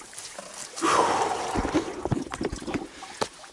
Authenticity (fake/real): real